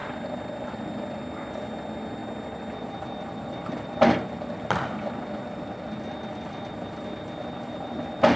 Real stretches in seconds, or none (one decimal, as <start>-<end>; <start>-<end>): 0.0-8.4